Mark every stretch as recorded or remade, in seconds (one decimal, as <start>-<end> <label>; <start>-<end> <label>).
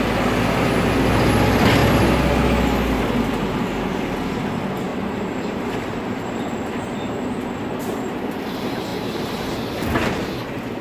0.0-4.9 recorded; 4.9-7.6 remade; 7.6-8.9 recorded; 8.9-10.0 remade; 10.0-10.8 recorded